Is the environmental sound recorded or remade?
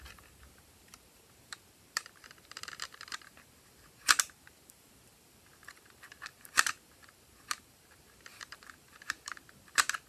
remade